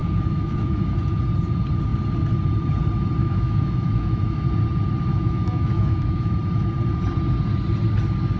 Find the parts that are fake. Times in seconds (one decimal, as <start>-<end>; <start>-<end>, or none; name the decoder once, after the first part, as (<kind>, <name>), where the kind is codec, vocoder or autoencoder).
0.0-1.2 (autoencoder, DAC-VAE); 3.2-4.4; 5.1-6.3